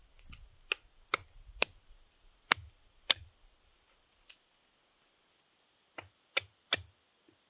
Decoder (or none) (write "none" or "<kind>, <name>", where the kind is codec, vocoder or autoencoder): none